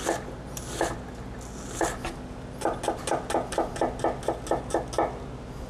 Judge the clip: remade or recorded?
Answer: recorded